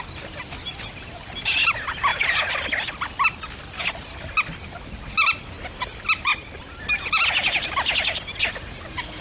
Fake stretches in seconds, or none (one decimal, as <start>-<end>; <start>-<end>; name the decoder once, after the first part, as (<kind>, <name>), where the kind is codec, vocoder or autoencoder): 2.1-3.9 (vocoder, BigVGAN v2)